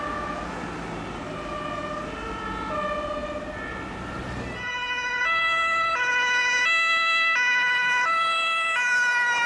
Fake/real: real